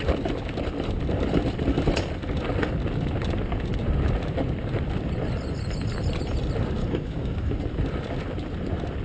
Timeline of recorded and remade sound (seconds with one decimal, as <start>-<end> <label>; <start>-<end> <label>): 0.0-6.8 recorded; 6.8-7.5 remade; 7.5-9.0 recorded